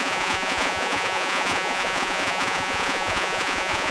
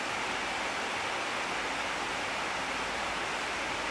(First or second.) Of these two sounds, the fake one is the first